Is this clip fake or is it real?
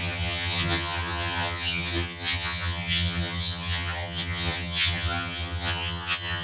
fake